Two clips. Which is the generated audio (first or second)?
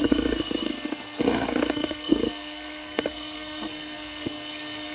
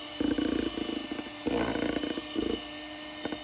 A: first